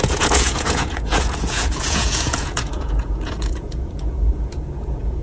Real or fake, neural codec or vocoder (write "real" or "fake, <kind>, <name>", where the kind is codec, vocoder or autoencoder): fake, vocoder, Vocos